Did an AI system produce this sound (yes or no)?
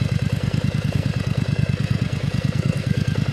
yes